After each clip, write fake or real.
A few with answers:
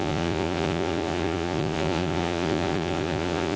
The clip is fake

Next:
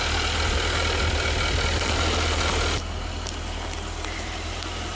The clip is real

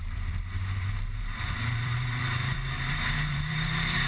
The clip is fake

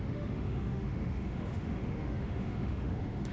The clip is fake